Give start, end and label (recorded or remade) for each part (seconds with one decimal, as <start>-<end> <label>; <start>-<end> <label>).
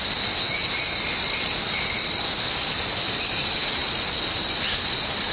0.0-5.3 recorded